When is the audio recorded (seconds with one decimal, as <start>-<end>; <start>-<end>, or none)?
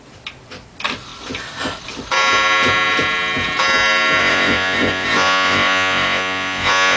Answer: 0.0-4.2